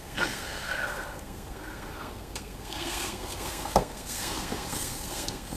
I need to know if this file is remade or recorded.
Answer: remade